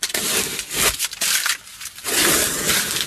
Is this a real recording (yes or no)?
yes